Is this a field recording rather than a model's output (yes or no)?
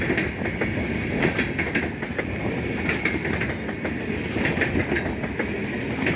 yes